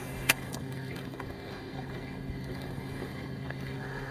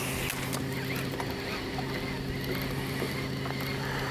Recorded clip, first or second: second